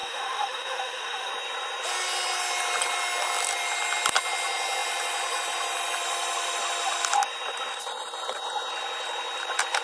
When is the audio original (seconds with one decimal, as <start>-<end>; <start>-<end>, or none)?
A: 1.3-9.8